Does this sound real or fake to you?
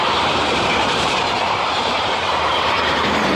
fake